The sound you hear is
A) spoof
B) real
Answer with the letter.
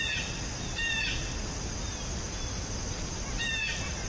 B